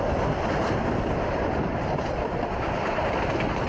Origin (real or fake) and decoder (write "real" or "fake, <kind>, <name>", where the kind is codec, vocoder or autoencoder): real